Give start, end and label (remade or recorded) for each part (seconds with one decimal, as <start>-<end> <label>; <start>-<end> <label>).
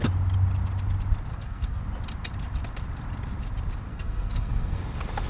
0.0-1.3 recorded; 1.3-1.8 remade; 1.8-3.9 recorded; 3.9-4.8 remade; 4.8-5.3 recorded